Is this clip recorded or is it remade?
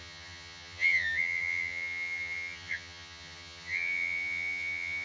remade